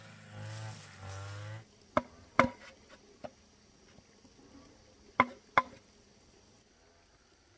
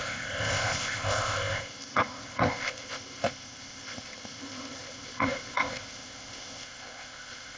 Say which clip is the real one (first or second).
first